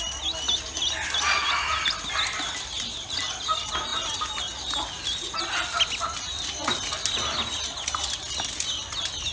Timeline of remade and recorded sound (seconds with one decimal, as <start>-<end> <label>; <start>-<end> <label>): 0.0-9.3 recorded